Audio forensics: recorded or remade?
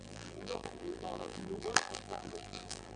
remade